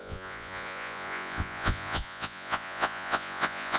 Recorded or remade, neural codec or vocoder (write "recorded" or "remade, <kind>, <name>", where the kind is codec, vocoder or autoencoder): remade, vocoder, Vocos